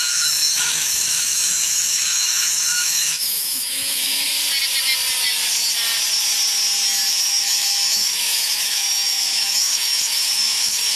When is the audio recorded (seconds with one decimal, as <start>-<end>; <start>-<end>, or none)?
4.3-7.1